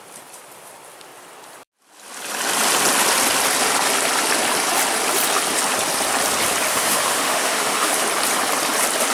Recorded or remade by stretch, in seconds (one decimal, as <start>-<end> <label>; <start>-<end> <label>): 0.0-6.7 recorded; 6.7-7.9 remade; 7.9-9.1 recorded